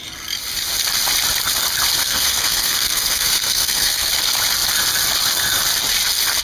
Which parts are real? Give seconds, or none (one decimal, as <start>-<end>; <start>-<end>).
0.0-2.0; 4.1-6.4